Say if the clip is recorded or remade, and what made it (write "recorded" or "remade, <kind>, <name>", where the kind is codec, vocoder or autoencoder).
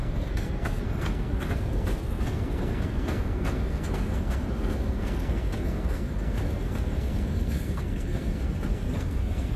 remade, codec, SNAC